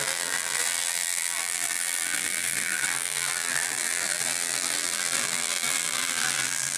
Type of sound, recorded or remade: remade